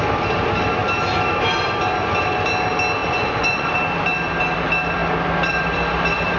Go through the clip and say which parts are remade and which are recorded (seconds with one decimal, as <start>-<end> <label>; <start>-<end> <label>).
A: 0.0-3.0 recorded; 3.0-3.7 remade; 3.7-6.4 recorded